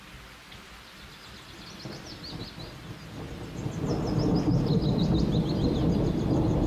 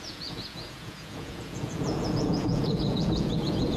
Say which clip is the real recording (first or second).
first